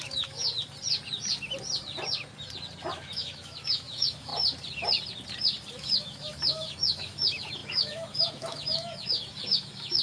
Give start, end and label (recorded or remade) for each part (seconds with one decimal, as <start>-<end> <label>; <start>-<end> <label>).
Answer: 0.0-0.5 remade; 0.5-2.9 recorded; 2.9-4.3 remade; 4.3-5.7 recorded; 5.7-10.0 remade